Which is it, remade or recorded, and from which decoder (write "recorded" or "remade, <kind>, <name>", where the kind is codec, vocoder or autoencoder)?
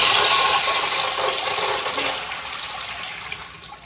recorded